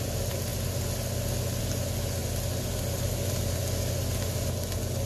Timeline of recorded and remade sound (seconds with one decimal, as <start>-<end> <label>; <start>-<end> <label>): 0.0-5.1 recorded